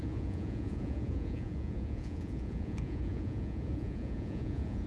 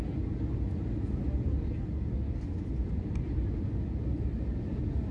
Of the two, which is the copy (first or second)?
first